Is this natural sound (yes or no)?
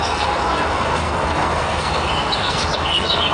no